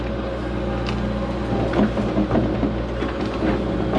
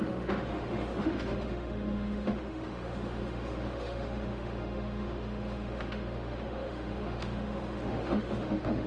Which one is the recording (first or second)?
first